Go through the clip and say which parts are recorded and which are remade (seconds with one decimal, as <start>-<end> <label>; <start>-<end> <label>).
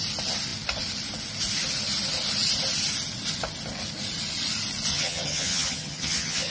0.0-4.9 recorded; 4.9-6.5 remade